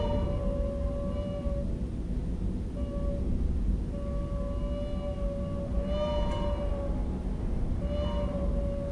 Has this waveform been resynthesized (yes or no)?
no